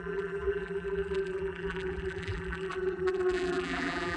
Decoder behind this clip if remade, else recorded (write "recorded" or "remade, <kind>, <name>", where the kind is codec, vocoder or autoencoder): remade, vocoder, BigVGAN v2